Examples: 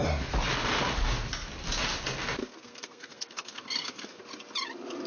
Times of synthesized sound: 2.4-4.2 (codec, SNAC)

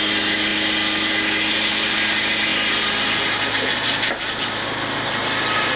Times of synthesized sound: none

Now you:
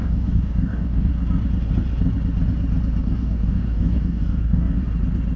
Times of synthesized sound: 0.0-1.1 (codec, DAC); 3.0-4.8